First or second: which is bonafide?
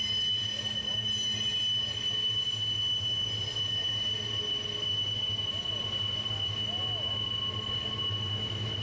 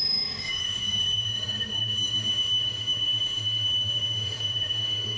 first